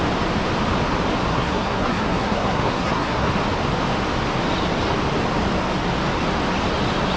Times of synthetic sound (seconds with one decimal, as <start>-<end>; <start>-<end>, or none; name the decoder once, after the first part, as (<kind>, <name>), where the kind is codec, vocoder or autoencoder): 1.3-3.3 (codec, SNAC)